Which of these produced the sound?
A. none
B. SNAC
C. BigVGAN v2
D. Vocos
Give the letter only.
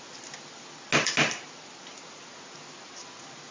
A